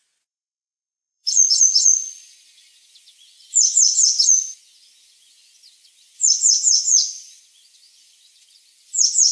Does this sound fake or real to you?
fake